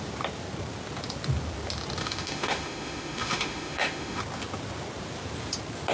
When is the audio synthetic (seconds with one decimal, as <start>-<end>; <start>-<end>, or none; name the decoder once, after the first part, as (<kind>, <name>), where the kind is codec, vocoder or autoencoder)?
2.0-4.2 (autoencoder, DAC-VAE)